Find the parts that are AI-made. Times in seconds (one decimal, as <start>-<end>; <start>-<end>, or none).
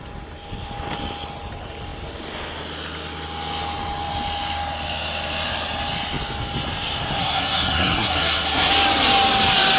7.2-8.7